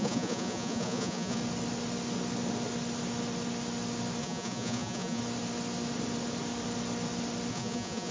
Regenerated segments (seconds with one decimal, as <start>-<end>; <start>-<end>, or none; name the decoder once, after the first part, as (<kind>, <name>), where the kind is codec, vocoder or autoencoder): 0.0-1.4 (vocoder, Vocos); 4.2-5.2; 7.5-8.1

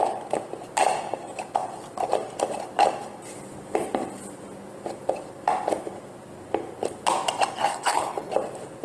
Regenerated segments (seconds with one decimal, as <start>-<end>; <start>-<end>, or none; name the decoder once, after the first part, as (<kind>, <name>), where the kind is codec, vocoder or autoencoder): 7.7-8.3 (codec, HILCodec)

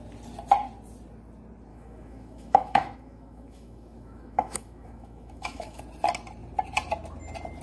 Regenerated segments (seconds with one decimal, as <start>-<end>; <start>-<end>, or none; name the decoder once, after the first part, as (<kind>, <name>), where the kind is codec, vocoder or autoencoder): 1.7-5.8 (autoencoder, DAC-VAE)

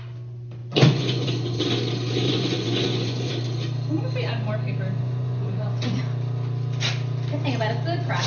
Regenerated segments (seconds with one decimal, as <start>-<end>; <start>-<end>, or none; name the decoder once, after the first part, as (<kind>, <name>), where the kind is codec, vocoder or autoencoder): 0.6-1.6 (vocoder, Vocos); 2.2-3.3; 5.0-6.0

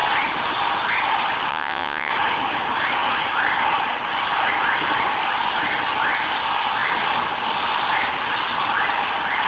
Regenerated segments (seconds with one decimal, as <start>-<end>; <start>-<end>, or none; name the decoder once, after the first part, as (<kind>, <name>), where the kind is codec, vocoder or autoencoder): 1.5-2.1 (vocoder, WaveNeXt)

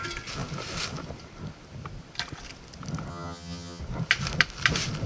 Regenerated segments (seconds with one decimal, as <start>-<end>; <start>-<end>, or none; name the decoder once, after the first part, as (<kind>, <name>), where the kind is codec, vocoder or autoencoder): 3.1-3.8 (vocoder, HiFi-GAN)

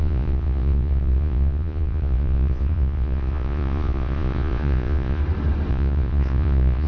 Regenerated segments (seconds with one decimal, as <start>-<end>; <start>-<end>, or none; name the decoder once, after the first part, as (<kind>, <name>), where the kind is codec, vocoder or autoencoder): 0.0-5.2 (vocoder, Vocos); 5.7-6.9